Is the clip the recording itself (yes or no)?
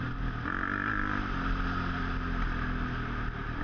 yes